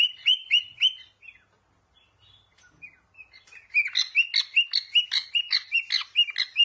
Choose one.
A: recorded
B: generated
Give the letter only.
A